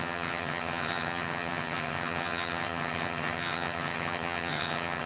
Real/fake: fake